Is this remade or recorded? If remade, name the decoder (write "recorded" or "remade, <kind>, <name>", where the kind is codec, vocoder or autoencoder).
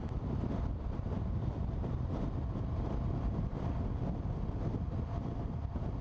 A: recorded